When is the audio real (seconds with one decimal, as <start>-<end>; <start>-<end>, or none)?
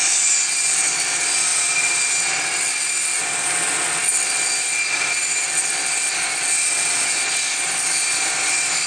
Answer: 0.0-8.9